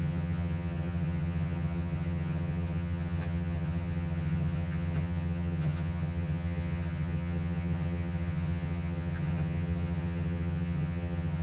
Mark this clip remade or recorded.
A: remade